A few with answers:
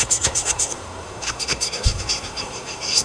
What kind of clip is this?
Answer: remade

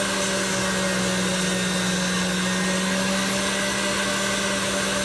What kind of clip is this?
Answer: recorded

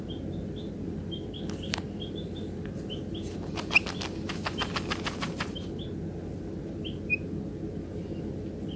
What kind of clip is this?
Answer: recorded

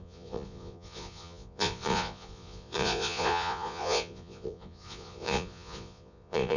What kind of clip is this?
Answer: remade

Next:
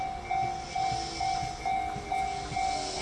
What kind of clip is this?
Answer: recorded